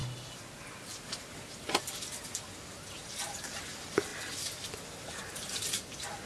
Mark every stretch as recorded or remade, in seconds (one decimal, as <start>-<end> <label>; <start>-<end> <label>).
0.0-6.2 recorded